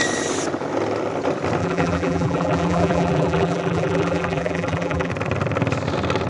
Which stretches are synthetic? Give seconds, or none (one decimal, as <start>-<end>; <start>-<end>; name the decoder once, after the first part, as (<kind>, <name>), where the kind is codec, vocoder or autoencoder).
1.6-5.1 (vocoder, BigVGAN v2)